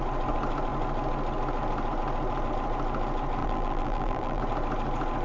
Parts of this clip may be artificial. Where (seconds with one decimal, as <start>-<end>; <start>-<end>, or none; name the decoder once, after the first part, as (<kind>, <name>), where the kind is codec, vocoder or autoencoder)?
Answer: 3.4-4.4 (vocoder, BigVGAN v2)